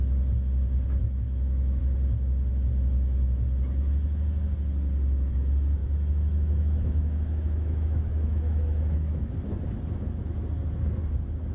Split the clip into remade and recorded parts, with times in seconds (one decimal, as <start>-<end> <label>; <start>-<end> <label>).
0.0-1.0 recorded; 1.0-1.8 remade; 1.8-5.8 recorded; 5.8-9.2 remade; 9.2-11.5 recorded